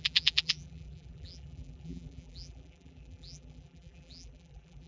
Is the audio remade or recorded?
remade